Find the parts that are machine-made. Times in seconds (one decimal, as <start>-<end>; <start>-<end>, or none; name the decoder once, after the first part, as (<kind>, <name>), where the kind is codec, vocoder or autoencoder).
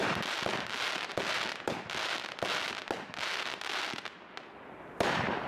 none